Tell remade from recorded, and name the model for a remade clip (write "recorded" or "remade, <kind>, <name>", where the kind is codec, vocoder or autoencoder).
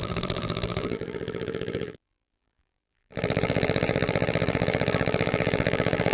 remade, vocoder, BigVGAN v2